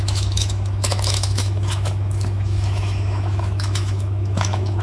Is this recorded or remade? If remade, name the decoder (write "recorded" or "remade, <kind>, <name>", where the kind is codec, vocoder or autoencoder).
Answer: remade, autoencoder, DAC-VAE